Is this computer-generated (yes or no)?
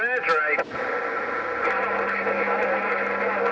no